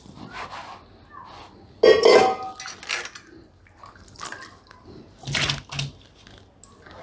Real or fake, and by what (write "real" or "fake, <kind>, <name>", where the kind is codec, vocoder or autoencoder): real